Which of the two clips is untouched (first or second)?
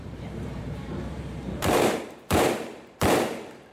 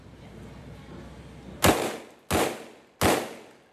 second